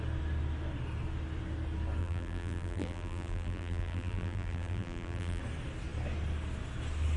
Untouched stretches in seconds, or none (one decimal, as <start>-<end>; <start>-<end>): 0.0-2.0; 5.4-7.2